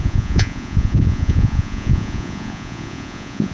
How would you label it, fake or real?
fake